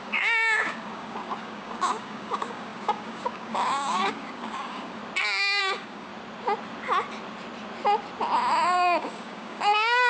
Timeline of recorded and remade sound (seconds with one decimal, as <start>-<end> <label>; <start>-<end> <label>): 0.0-5.0 remade; 5.0-5.6 recorded; 5.6-6.1 remade; 6.1-8.5 recorded; 8.5-10.1 remade